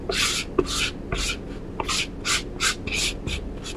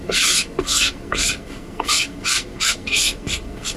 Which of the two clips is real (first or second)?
first